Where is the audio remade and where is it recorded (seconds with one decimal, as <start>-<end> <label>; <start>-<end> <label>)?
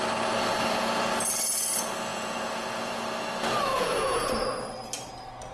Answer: 0.0-2.1 recorded; 2.1-3.0 remade; 3.0-3.7 recorded; 3.7-4.3 remade; 4.3-5.5 recorded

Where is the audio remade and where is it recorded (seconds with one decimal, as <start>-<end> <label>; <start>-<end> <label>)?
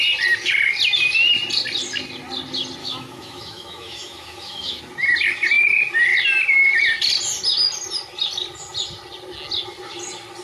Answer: 0.0-2.8 recorded; 2.8-4.8 remade; 4.8-10.4 recorded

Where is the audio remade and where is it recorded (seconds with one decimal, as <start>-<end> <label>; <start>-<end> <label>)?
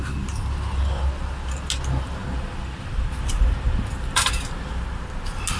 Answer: 0.0-2.2 recorded; 2.2-4.3 remade; 4.3-5.6 recorded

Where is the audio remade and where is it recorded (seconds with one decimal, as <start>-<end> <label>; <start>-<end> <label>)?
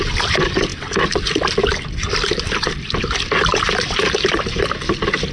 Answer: 0.0-5.3 recorded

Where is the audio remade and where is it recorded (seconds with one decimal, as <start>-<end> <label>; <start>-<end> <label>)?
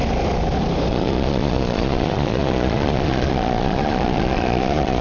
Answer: 0.0-0.9 recorded; 0.9-5.0 remade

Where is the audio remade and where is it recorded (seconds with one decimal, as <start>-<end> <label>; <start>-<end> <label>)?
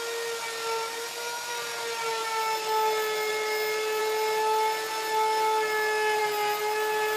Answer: 0.0-7.2 recorded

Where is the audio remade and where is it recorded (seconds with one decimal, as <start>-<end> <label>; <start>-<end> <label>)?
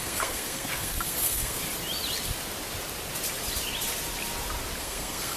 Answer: 0.0-1.6 remade; 1.6-4.8 recorded; 4.8-5.4 remade